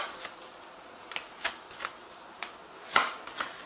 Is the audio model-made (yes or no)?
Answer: no